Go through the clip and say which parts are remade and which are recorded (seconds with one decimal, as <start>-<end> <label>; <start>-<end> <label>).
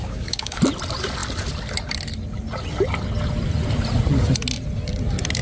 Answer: 0.0-0.6 remade; 0.6-5.4 recorded